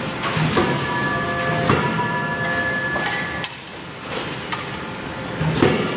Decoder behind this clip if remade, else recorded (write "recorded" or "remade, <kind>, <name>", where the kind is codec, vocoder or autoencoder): recorded